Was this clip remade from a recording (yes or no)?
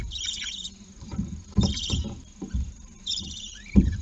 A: yes